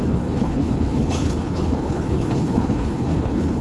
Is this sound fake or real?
fake